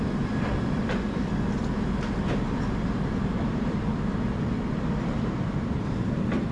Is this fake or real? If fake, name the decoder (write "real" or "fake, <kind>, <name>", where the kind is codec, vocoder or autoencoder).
fake, vocoder, BigVGAN v2